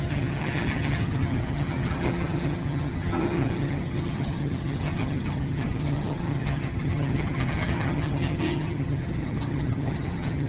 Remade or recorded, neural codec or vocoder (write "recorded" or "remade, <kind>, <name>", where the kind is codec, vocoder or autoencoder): remade, vocoder, HiFi-GAN